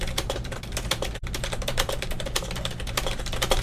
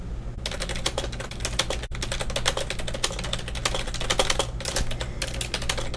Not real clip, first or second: first